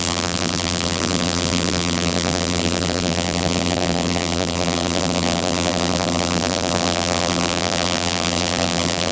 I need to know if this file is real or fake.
fake